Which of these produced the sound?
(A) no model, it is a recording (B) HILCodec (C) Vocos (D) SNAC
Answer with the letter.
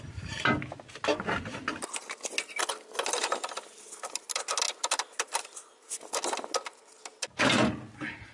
A